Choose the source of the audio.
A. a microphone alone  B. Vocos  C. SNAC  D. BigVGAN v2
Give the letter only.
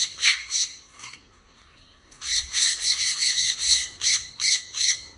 C